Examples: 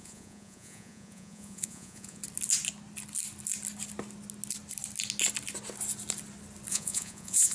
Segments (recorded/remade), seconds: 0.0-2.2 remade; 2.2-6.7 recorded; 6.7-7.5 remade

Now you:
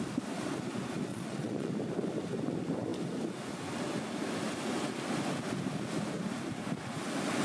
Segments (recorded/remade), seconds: 0.0-1.1 recorded; 1.1-1.7 remade; 1.7-7.4 recorded

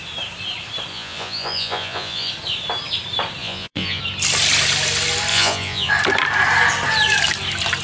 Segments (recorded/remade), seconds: 0.0-0.9 recorded; 0.9-2.3 remade; 2.3-3.4 recorded; 3.4-4.0 remade; 4.0-5.3 recorded; 5.3-5.9 remade; 5.9-7.8 recorded

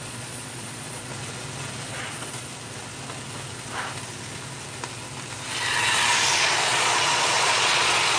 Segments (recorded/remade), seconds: 0.0-1.1 remade; 1.1-1.9 recorded; 1.9-2.5 remade; 2.5-6.4 recorded; 6.4-8.2 remade

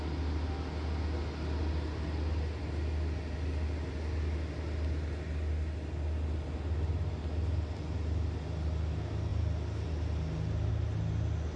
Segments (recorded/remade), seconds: 0.0-11.6 recorded

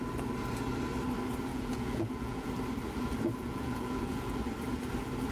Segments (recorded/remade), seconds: 0.0-1.5 recorded; 1.5-2.5 remade; 2.5-3.4 recorded; 3.4-4.2 remade; 4.2-5.3 recorded